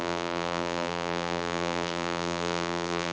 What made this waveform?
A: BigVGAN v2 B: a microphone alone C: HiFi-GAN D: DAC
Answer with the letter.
A